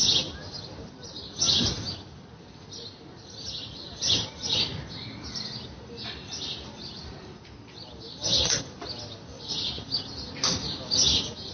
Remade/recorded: recorded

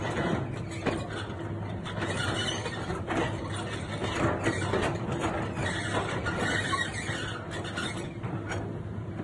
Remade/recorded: recorded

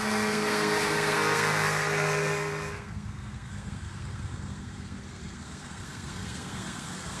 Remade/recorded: remade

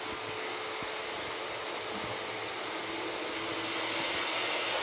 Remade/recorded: recorded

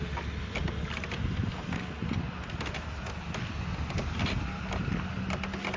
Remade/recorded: recorded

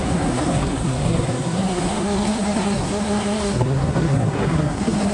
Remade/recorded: remade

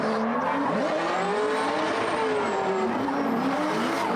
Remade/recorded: recorded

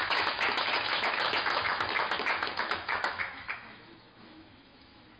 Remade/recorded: remade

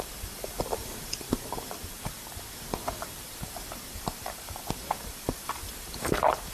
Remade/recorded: remade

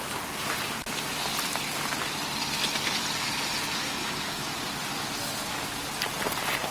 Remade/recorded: recorded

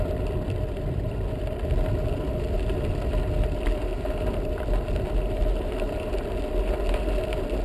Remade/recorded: recorded